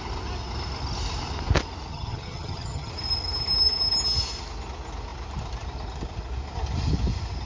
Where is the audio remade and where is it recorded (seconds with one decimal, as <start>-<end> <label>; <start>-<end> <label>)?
0.0-1.9 recorded; 1.9-2.9 remade; 2.9-7.5 recorded